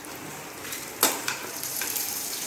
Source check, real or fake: fake